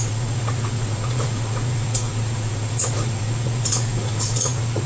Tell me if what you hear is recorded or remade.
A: remade